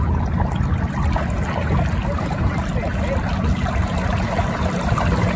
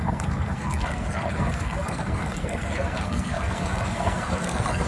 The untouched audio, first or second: first